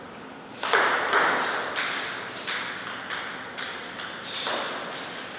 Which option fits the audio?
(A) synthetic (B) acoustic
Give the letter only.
B